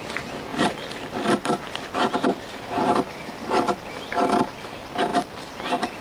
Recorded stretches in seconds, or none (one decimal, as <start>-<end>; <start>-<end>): 0.0-0.5; 4.1-6.0